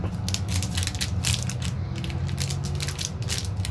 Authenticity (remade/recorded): recorded